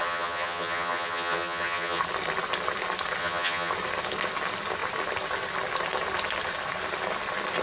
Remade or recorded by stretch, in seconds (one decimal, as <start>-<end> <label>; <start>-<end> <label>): 0.0-2.0 remade; 2.0-3.2 recorded; 3.2-3.7 remade; 3.7-7.6 recorded